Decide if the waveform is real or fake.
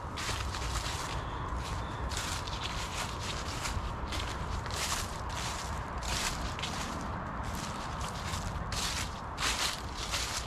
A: fake